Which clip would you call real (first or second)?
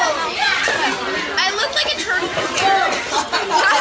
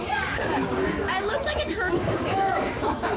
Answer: first